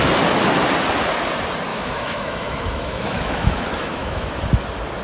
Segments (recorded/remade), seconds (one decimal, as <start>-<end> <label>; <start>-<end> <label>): 0.0-1.7 recorded; 1.7-4.3 remade; 4.3-5.0 recorded